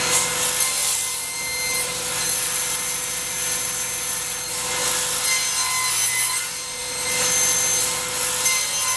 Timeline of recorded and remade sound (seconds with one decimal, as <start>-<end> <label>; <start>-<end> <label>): 0.0-9.0 recorded